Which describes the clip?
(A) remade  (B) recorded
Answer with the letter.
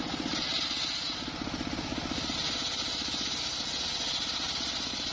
B